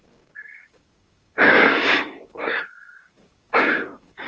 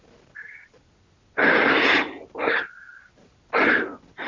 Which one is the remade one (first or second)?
first